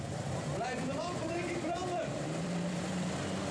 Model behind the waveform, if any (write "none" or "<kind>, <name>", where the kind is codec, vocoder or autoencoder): vocoder, BigVGAN v2